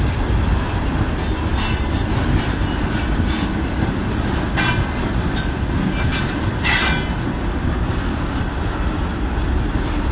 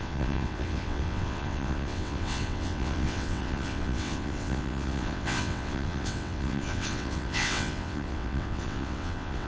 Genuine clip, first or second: first